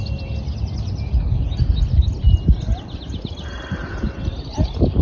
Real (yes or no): yes